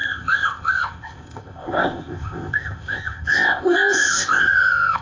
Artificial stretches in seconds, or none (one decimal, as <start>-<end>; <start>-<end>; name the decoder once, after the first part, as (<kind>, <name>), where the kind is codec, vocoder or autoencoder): 0.0-5.0 (codec, ZipCodec)